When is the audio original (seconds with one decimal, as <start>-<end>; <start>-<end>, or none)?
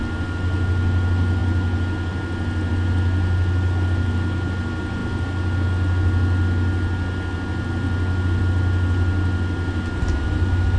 0.0-10.8